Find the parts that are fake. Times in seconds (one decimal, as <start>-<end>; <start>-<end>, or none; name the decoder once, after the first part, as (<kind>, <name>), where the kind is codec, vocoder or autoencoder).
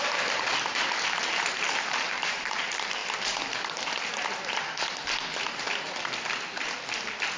0.0-3.0 (vocoder, BigVGAN v2)